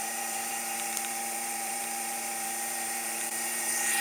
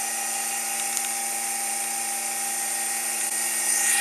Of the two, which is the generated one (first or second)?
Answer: first